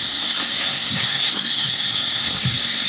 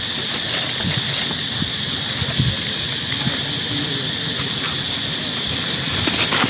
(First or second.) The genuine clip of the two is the second